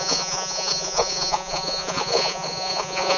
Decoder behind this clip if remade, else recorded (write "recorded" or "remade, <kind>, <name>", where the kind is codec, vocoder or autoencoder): remade, vocoder, Vocos